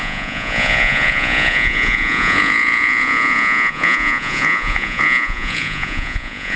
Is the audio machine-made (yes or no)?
yes